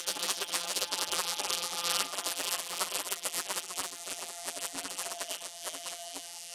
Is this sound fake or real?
fake